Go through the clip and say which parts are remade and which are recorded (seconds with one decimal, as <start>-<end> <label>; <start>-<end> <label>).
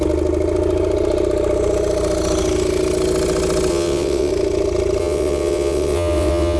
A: 0.0-3.7 recorded; 3.7-4.3 remade; 4.3-5.0 recorded; 5.0-6.6 remade